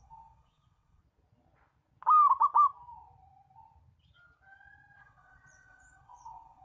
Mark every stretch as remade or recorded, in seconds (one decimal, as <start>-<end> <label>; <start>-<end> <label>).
0.0-1.0 remade; 1.0-5.0 recorded; 5.0-6.6 remade